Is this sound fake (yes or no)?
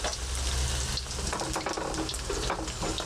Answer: no